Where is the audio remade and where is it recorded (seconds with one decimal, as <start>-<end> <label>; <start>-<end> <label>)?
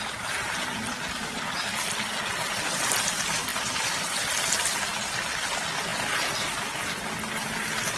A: 0.0-3.5 recorded; 3.5-4.3 remade; 4.3-8.0 recorded